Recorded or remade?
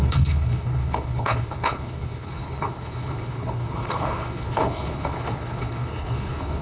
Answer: remade